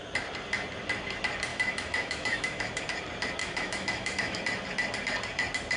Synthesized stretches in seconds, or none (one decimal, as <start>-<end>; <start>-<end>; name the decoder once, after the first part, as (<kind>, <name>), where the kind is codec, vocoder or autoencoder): 1.5-2.8 (autoencoder, DAC-VAE); 3.4-4.4